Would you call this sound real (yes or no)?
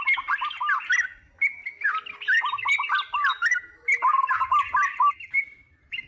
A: yes